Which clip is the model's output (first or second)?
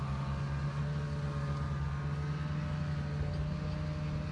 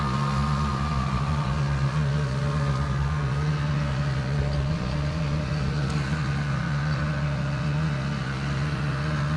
second